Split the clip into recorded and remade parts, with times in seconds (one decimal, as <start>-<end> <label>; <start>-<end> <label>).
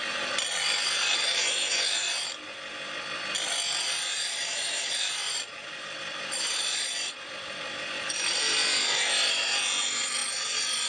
0.0-4.2 recorded; 4.2-8.4 remade; 8.4-10.2 recorded; 10.2-10.9 remade